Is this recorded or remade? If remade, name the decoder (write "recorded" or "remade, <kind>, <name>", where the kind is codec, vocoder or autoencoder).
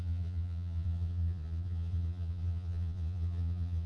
remade, vocoder, Vocos